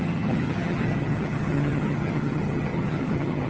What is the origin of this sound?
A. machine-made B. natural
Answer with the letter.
A